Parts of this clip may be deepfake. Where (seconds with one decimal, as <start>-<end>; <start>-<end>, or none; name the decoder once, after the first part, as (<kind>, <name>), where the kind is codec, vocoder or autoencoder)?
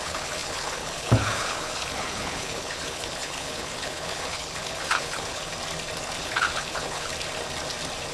0.0-5.4 (codec, HILCodec); 6.2-7.1